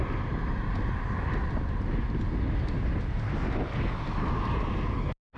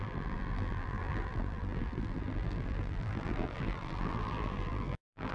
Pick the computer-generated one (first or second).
second